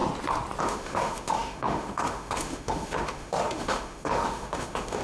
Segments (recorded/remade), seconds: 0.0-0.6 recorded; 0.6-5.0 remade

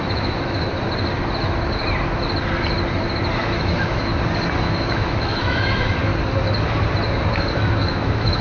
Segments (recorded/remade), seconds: 0.0-0.7 remade; 0.7-3.4 recorded; 3.4-4.1 remade; 4.1-4.6 recorded; 4.6-6.1 remade; 6.1-7.3 recorded; 7.3-8.4 remade

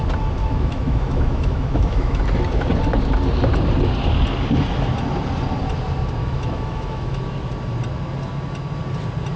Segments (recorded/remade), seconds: 0.0-0.4 recorded; 0.4-2.2 remade; 2.2-6.2 recorded; 6.2-7.2 remade; 7.2-9.4 recorded